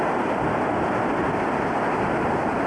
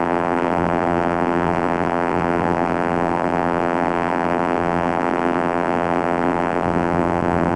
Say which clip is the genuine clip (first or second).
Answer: first